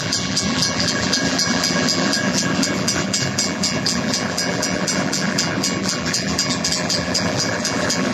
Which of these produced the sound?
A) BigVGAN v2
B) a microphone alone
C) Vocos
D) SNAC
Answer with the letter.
A